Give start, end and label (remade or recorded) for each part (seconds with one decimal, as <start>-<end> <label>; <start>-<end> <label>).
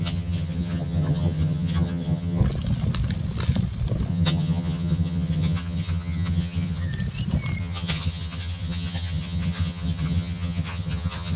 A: 0.0-2.4 remade; 2.4-4.1 recorded; 4.1-6.9 remade; 6.9-7.6 recorded; 7.6-11.4 remade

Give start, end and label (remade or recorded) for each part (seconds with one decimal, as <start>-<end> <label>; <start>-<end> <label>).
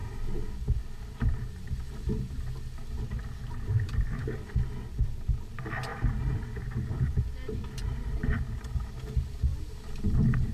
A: 0.0-10.5 recorded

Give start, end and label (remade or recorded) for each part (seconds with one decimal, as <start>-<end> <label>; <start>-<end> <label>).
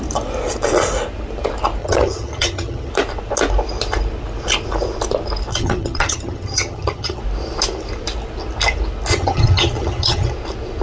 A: 0.0-1.8 recorded; 1.8-2.9 remade; 2.9-5.5 recorded; 5.5-7.2 remade; 7.2-9.1 recorded; 9.1-10.3 remade; 10.3-10.8 recorded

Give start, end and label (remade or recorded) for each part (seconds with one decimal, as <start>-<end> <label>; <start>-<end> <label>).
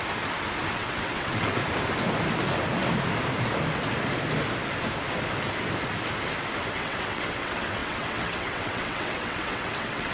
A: 0.0-0.7 recorded; 0.7-1.6 remade; 1.6-6.7 recorded; 6.7-10.1 remade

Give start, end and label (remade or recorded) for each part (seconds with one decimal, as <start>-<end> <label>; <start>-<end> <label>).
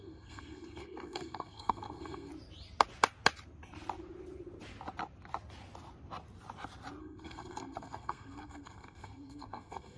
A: 0.0-2.3 remade; 2.3-7.0 recorded; 7.0-10.0 remade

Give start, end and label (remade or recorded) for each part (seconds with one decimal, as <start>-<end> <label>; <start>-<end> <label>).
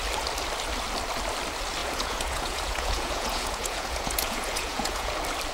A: 0.0-1.8 recorded; 1.8-5.1 remade; 5.1-5.5 recorded